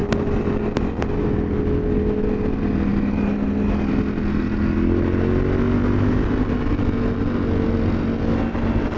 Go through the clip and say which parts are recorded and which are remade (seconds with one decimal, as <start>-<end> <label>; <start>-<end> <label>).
0.0-9.0 recorded